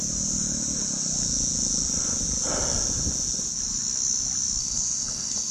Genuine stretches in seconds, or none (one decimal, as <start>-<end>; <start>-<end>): 0.0-4.6